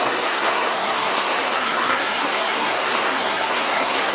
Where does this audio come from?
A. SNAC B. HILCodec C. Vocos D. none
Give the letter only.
A